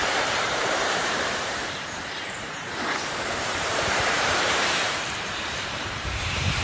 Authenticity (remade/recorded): remade